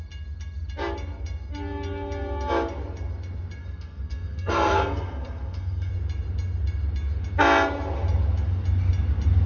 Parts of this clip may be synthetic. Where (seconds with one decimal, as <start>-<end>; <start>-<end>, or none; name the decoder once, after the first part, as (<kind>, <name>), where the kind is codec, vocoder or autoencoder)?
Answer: 3.6-5.9 (codec, SNAC)